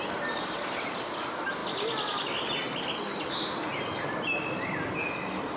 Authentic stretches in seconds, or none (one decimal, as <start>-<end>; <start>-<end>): 0.0-5.6